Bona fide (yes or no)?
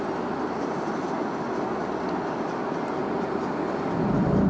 yes